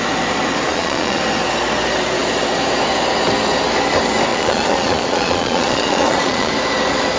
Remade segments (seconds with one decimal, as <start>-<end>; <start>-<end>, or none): 0.7-1.2; 4.3-6.5